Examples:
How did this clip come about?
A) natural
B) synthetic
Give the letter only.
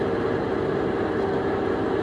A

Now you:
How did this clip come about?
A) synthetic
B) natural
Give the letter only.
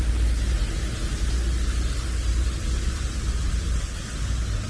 B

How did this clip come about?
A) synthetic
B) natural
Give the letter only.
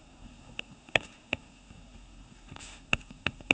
A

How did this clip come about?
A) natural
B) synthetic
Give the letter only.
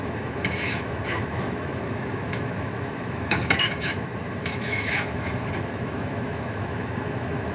B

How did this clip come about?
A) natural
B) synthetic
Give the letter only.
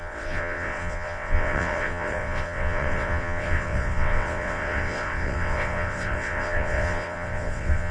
B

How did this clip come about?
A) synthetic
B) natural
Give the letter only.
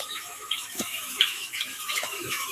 A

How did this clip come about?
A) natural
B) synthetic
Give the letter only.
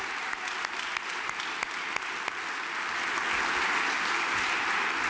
A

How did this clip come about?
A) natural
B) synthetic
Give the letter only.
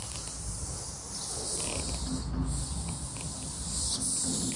A